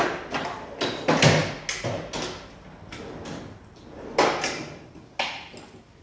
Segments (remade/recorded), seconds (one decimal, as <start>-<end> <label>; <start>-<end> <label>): 0.0-6.0 recorded